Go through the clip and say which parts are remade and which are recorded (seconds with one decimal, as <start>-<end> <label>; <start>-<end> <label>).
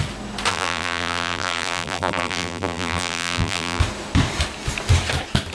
0.0-0.5 recorded; 0.5-3.8 remade; 3.8-5.5 recorded